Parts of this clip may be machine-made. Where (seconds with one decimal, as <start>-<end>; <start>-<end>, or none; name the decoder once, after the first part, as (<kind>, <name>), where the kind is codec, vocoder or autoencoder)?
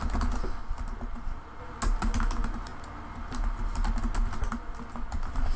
0.6-1.6 (vocoder, BigVGAN v2); 4.5-5.6